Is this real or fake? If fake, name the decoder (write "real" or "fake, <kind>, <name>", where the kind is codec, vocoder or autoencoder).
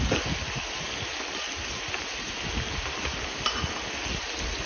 real